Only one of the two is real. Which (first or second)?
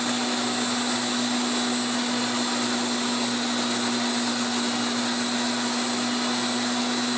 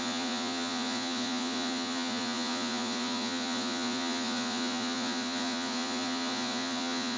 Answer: first